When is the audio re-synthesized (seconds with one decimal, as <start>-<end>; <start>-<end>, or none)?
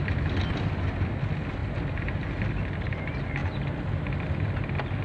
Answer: none